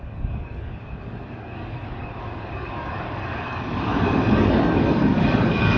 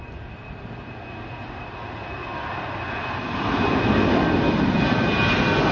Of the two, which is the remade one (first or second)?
first